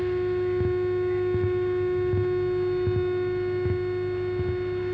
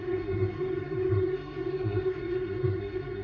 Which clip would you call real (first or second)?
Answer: first